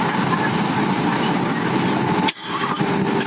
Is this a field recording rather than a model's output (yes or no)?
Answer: yes